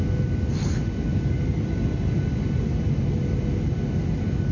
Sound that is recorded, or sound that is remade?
recorded